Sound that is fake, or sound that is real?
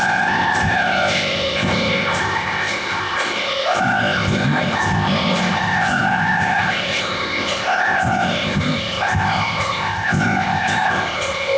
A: fake